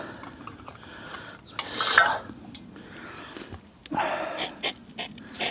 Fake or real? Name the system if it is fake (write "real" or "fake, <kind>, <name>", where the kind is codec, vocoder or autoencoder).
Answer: real